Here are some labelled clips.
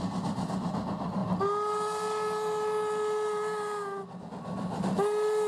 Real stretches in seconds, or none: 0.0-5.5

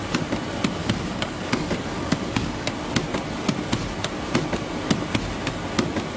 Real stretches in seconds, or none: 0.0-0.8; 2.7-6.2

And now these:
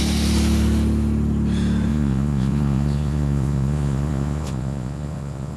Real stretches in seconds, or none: 0.0-1.9